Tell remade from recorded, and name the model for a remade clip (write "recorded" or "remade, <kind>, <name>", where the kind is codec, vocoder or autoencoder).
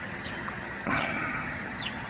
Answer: remade, vocoder, HiFi-GAN